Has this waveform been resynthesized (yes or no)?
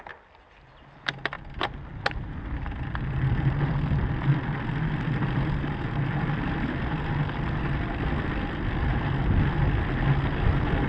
no